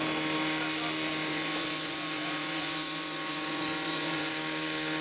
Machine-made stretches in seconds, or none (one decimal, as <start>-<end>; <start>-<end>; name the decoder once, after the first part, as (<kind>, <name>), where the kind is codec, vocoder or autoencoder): 1.3-4.3 (vocoder, Vocos)